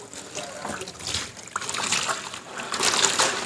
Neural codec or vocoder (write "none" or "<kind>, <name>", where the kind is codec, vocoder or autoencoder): none